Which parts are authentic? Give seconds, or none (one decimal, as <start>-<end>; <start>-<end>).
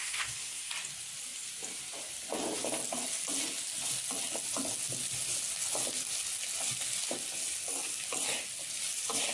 0.7-9.3